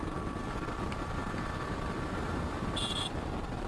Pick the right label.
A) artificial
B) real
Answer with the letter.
A